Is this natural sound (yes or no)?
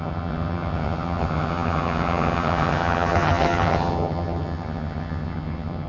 no